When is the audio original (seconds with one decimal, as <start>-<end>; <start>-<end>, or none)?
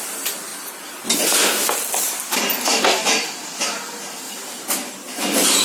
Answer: 0.0-5.6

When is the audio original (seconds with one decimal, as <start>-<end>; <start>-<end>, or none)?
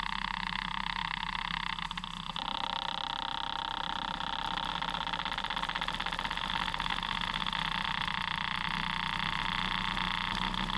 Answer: 0.0-10.8